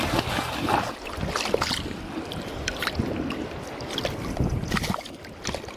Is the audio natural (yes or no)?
yes